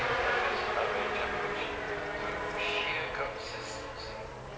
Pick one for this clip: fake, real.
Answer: real